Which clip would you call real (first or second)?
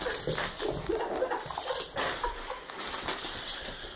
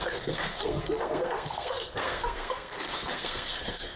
first